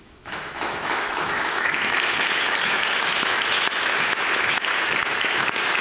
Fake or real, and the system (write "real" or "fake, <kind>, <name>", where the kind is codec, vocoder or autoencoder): fake, autoencoder, DAC-VAE